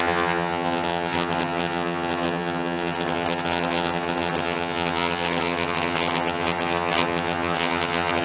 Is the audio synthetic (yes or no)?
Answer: yes